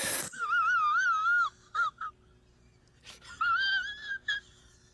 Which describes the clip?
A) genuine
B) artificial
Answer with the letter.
A